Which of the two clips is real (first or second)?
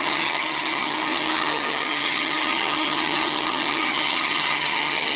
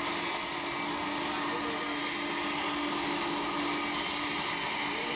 second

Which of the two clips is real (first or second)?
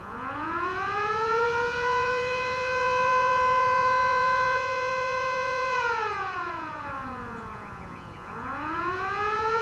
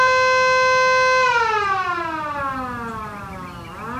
second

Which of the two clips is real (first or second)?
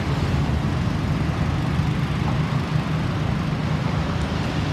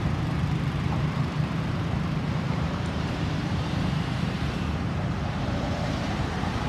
first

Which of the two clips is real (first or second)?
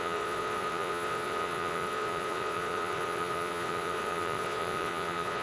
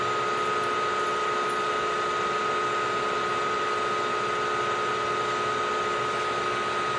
second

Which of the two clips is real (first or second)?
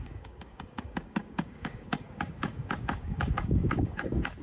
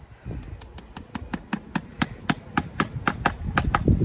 second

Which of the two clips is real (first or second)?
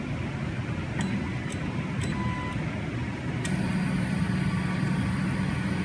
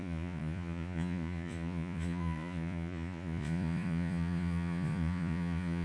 first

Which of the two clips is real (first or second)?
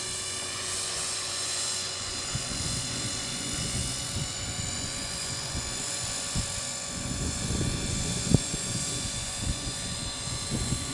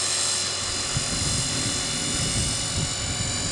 second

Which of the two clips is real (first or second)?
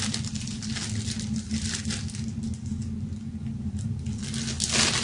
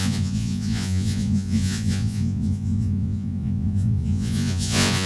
first